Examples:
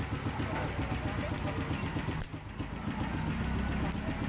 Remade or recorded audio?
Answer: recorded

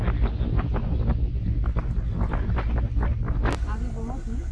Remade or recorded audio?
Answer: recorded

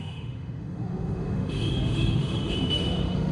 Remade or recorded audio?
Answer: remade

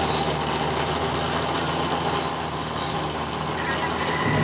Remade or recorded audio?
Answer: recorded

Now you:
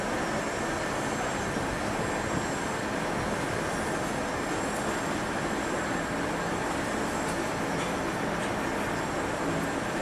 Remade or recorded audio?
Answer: recorded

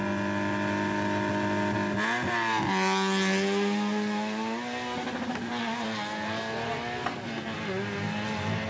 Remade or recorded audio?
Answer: recorded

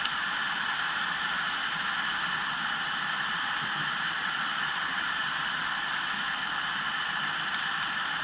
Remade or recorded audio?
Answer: remade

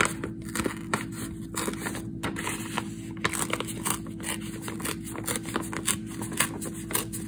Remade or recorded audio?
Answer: recorded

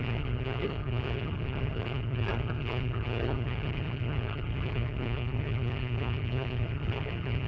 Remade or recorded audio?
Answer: remade